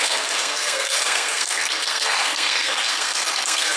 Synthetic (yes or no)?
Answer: yes